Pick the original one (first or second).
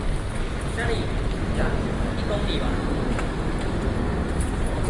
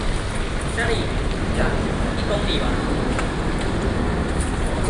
first